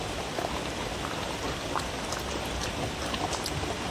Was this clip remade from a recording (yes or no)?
no